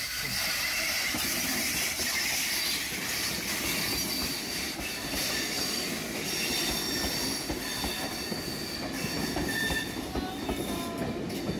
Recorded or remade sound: recorded